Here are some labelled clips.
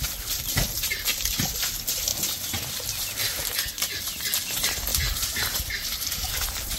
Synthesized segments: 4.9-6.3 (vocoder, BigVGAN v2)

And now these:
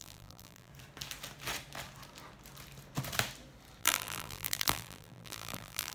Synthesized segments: 0.0-0.7 (vocoder, BigVGAN v2); 3.8-5.9

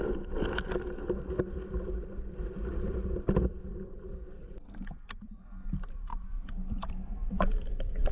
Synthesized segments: 2.7-4.6 (vocoder, BigVGAN v2); 6.1-6.9

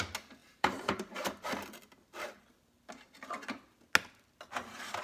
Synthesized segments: 0.4-1.3 (vocoder, BigVGAN v2)

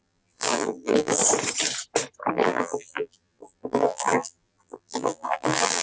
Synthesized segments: 0.0-1.2 (vocoder, BigVGAN v2); 2.3-5.8

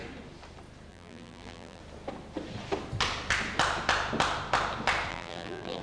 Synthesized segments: 0.9-1.8 (vocoder, BigVGAN v2); 5.1-5.8

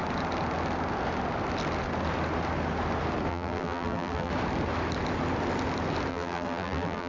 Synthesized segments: 3.3-4.3 (vocoder, BigVGAN v2); 6.1-7.1

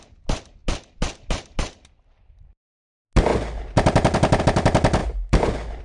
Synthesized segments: 3.3-4.4 (vocoder, BigVGAN v2); 5.0-5.8